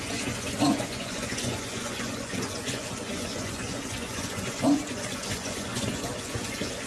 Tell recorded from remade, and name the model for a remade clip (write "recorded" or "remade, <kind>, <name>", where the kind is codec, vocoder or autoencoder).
remade, vocoder, Vocos